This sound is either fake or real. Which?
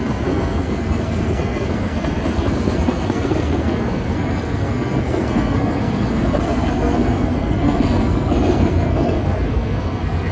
fake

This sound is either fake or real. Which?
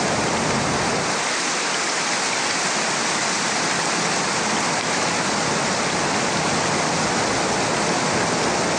real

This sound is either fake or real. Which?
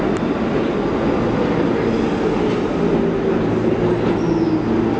real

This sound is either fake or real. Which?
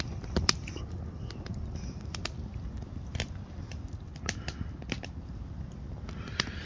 real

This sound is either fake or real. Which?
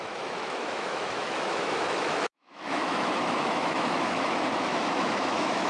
fake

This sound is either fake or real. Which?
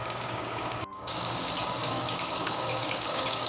fake